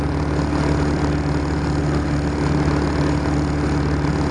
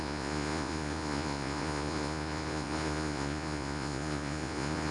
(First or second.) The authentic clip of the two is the first